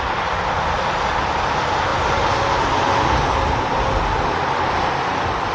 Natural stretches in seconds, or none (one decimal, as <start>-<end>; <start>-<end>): 0.0-5.5